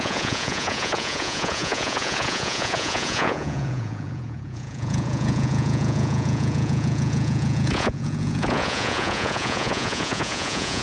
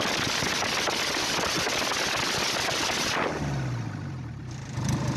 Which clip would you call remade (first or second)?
first